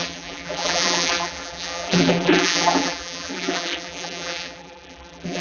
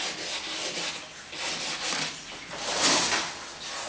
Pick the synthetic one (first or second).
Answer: first